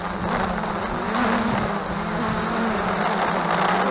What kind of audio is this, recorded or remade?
recorded